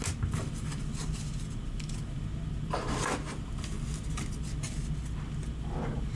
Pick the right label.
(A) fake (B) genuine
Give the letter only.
B